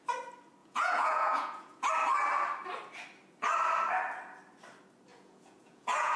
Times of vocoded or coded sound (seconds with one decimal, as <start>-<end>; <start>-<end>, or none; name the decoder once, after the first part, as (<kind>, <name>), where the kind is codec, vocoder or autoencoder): 0.6-1.9 (vocoder, Vocos); 5.1-6.2